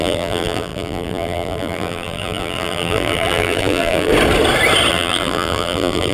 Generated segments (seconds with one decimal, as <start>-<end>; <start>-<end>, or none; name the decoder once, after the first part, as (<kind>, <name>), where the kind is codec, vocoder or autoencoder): 0.0-4.1 (vocoder, BigVGAN v2); 4.9-6.1